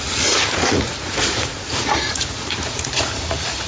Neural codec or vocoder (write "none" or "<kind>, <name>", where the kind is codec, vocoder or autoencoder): vocoder, Vocos